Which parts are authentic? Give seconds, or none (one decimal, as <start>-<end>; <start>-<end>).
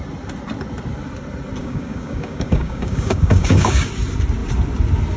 0.0-1.6; 3.9-5.2